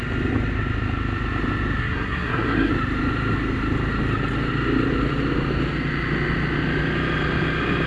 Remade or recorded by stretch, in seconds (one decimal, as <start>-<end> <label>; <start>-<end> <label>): 0.0-1.8 recorded; 1.8-2.7 remade; 2.7-7.9 recorded